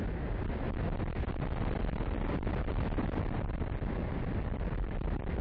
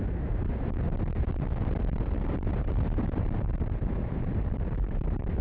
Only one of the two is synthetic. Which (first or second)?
second